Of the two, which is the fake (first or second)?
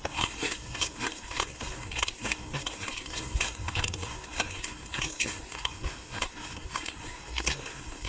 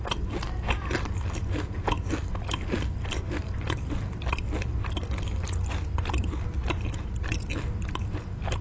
first